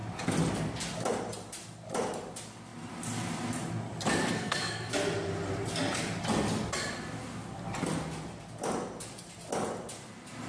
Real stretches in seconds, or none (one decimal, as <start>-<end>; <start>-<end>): 0.0-4.2; 4.9-10.5